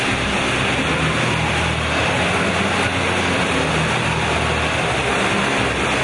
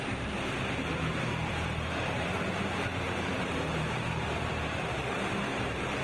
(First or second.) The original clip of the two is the first